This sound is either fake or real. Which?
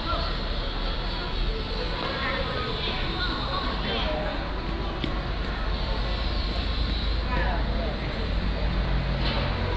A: real